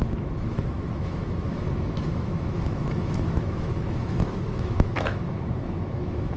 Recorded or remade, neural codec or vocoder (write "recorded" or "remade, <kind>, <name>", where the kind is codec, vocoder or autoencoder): remade, autoencoder, DAC-VAE